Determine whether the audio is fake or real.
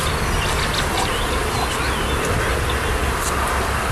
real